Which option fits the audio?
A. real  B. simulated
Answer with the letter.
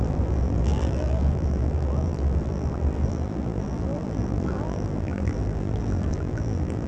B